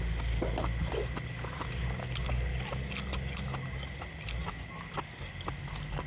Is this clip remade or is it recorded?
recorded